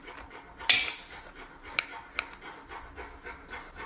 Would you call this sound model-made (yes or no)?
no